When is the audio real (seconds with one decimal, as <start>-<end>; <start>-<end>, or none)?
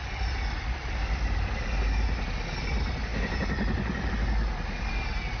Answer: 0.0-5.4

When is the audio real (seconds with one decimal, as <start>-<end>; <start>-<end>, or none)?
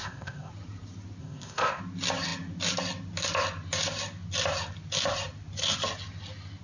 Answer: 0.5-1.2; 1.8-6.6